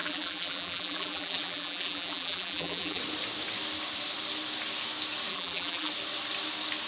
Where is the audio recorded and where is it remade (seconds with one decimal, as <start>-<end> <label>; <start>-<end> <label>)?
0.0-3.0 remade; 3.0-5.3 recorded; 5.3-5.9 remade; 5.9-6.9 recorded